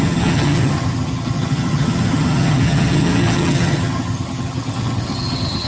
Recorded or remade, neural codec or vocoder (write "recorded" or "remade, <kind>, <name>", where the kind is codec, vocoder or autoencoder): remade, vocoder, HiFi-GAN